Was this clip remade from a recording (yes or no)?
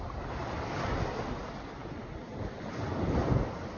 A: no